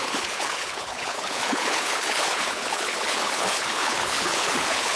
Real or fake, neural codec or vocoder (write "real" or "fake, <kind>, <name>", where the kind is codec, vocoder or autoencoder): fake, codec, HILCodec